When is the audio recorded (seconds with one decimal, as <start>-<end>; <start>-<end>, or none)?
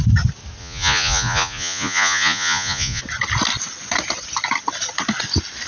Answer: 0.0-0.6; 3.0-5.7